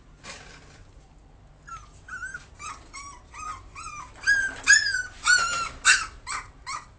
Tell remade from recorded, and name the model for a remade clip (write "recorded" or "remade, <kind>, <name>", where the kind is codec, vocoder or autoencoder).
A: recorded